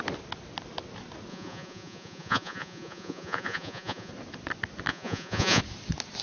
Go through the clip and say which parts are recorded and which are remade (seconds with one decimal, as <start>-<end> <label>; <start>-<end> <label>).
0.0-1.3 recorded; 1.3-4.1 remade; 4.1-4.9 recorded; 4.9-5.6 remade; 5.6-6.2 recorded